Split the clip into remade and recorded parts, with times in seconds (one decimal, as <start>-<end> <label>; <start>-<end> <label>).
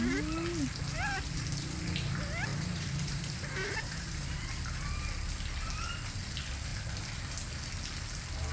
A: 0.0-2.5 recorded; 2.5-4.5 remade; 4.5-8.5 recorded